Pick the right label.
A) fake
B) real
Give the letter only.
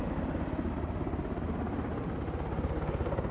B